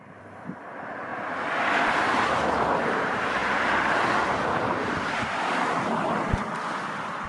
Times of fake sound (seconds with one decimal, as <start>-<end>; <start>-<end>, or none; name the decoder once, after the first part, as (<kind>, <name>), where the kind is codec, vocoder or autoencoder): 0.0-1.1 (vocoder, BigVGAN v2); 2.9-7.3